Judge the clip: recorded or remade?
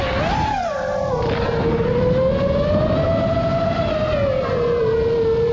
recorded